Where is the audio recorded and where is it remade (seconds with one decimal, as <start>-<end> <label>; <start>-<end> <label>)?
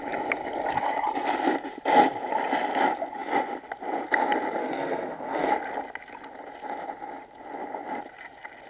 0.0-4.6 recorded; 4.6-5.5 remade; 5.5-8.7 recorded